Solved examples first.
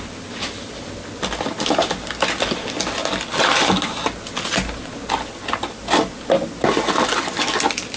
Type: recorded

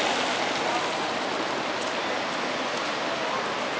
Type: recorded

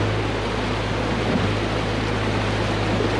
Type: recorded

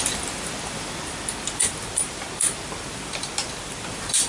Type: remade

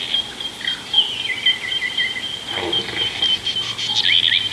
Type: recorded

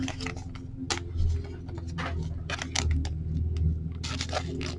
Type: recorded